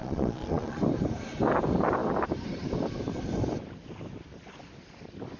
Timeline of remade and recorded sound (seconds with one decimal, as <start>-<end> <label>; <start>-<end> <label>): 0.0-0.8 remade; 0.8-5.4 recorded